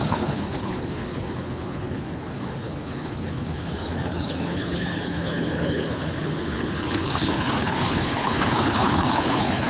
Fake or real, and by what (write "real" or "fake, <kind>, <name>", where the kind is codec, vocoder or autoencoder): fake, codec, HILCodec